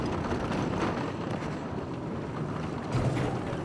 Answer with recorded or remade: recorded